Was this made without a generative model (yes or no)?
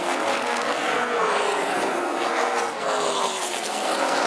no